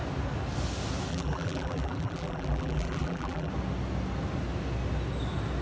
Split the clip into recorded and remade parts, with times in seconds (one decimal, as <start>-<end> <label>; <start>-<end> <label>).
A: 0.0-1.1 recorded; 1.1-3.5 remade; 3.5-5.6 recorded